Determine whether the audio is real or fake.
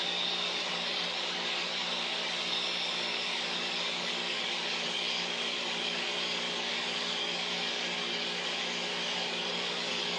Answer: fake